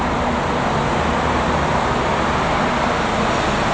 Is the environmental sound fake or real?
real